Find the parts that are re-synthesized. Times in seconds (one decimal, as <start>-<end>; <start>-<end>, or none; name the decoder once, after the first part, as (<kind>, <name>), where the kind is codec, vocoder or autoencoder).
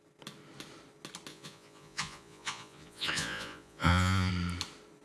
1.3-4.3 (vocoder, Vocos)